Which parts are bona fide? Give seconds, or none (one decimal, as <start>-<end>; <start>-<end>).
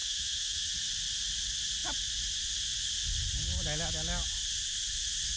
0.7-5.4